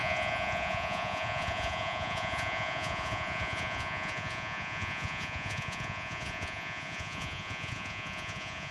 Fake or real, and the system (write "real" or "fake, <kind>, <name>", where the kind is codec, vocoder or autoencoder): fake, vocoder, Vocos